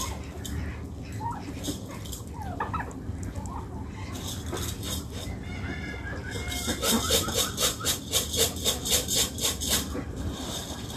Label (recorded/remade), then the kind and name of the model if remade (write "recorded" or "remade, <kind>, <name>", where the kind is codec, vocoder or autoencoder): recorded